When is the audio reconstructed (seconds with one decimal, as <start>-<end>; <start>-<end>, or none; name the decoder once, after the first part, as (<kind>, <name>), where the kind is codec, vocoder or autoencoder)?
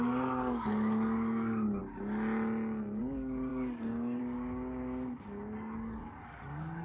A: 0.0-1.8 (codec, DAC); 3.0-6.8